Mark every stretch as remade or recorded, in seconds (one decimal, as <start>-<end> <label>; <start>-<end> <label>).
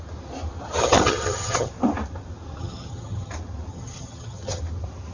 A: 0.0-0.8 recorded; 0.8-1.7 remade; 1.7-2.6 recorded; 2.6-3.3 remade; 3.3-3.7 recorded; 3.7-4.6 remade; 4.6-5.1 recorded